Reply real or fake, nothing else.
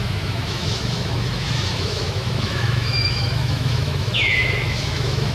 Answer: fake